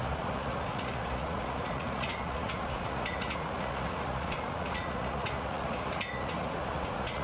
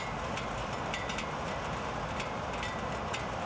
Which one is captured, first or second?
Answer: second